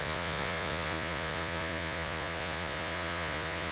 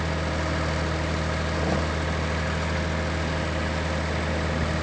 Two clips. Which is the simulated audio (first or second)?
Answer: first